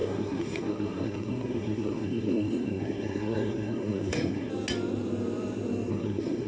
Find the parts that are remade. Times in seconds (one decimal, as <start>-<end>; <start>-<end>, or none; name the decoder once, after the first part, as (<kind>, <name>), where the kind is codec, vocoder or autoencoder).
0.0-4.5 (codec, SNAC); 5.9-6.5